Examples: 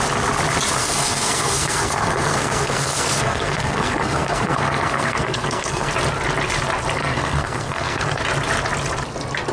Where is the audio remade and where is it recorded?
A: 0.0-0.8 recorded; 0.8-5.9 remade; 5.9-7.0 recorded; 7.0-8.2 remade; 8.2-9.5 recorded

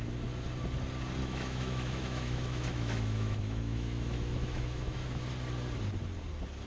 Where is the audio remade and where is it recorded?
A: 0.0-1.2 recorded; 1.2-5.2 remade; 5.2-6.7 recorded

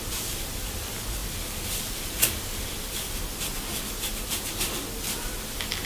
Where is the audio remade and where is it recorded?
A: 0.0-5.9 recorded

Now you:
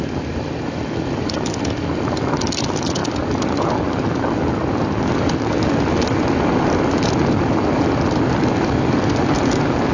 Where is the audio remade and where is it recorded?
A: 0.0-9.9 recorded

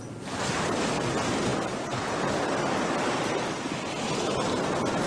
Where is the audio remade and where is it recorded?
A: 0.0-5.1 recorded